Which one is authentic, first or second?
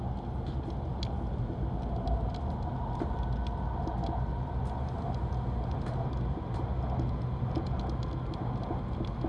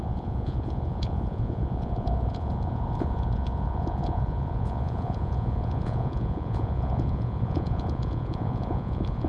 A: first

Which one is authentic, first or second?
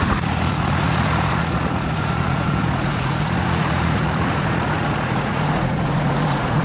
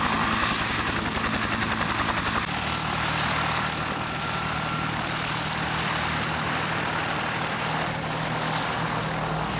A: second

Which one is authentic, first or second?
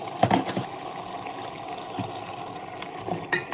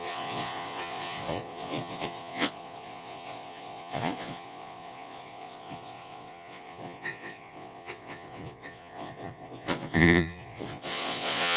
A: first